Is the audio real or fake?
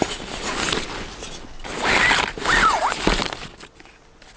real